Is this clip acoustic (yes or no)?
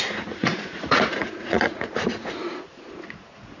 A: no